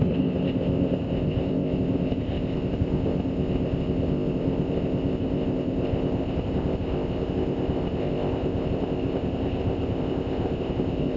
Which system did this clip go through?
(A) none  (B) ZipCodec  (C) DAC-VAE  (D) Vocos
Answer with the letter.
B